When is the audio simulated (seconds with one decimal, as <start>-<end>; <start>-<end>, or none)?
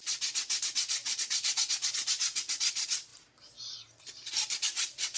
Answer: 1.0-1.6